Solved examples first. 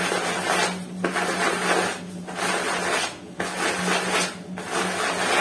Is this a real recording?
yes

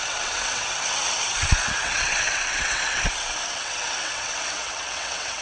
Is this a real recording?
no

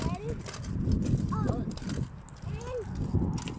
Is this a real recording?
yes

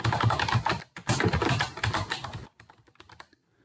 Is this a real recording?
yes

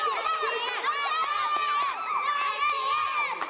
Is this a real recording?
yes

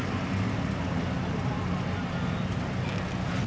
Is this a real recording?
yes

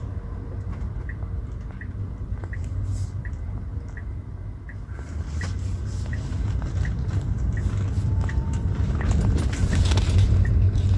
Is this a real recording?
yes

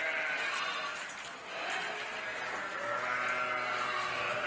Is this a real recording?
yes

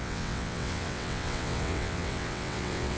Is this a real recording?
no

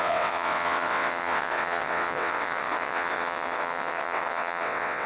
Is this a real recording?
no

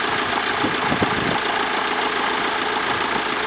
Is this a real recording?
yes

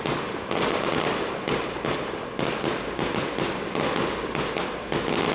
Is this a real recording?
yes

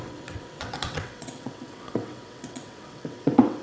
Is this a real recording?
no